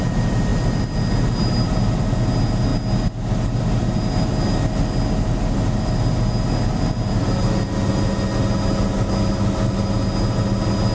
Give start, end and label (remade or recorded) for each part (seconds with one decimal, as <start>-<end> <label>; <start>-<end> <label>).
0.0-10.9 recorded